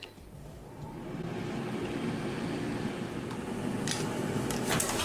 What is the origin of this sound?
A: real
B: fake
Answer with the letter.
A